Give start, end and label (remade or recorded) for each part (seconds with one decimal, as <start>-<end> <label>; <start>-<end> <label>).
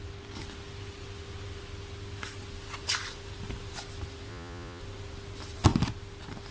0.0-4.3 recorded; 4.3-4.8 remade; 4.8-6.5 recorded